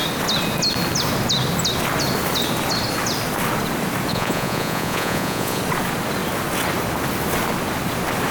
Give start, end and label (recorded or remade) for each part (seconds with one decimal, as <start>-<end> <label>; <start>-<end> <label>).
0.0-4.1 recorded; 4.1-5.6 remade; 5.6-8.3 recorded